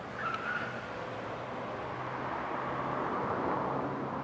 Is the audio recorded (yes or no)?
yes